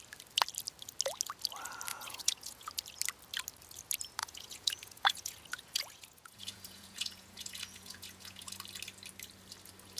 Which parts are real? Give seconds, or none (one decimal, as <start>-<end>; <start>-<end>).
0.0-1.9; 2.7-4.2; 8.5-10.0